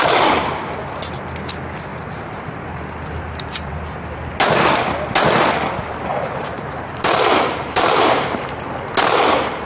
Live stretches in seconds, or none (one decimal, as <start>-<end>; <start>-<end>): 0.0-1.9; 3.7-6.1; 8.9-9.6